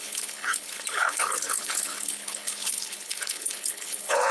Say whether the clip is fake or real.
fake